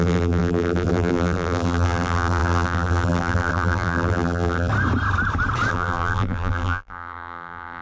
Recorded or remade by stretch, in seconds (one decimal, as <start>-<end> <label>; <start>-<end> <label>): 0.0-4.7 remade; 4.7-5.7 recorded; 5.7-7.8 remade